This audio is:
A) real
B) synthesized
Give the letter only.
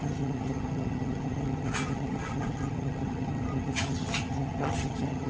B